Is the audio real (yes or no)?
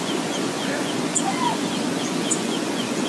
no